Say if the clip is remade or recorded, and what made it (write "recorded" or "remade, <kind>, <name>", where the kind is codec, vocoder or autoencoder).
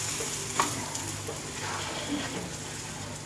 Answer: recorded